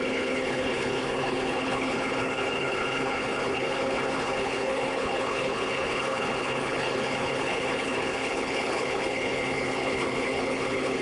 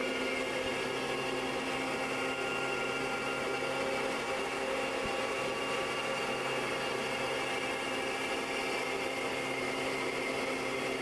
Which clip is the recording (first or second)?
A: second